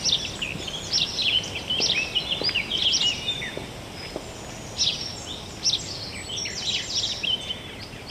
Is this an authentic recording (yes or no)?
no